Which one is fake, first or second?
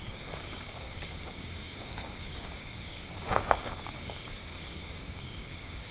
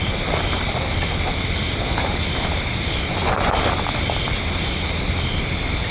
first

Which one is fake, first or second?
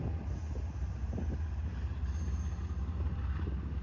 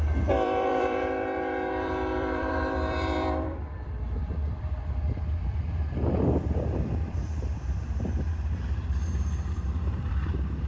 second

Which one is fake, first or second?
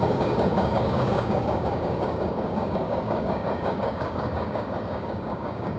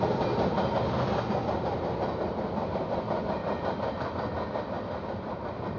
first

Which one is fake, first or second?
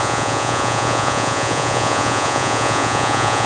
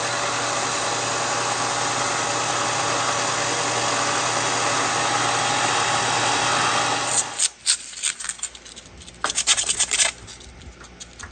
first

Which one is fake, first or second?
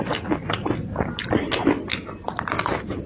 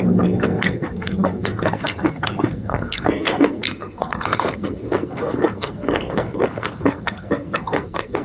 second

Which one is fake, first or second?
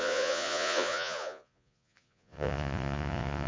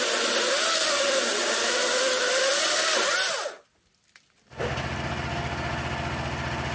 first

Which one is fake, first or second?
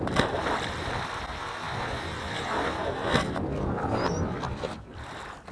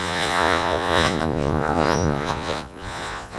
second